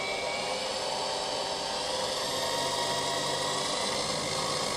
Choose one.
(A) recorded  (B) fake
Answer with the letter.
A